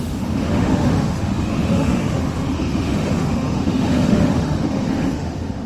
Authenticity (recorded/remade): remade